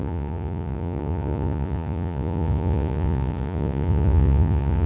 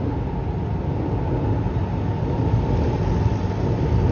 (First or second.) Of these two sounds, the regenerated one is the first